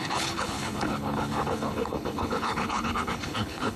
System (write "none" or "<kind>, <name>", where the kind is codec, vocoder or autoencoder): codec, HILCodec